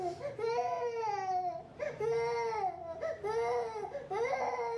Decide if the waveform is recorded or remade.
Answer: recorded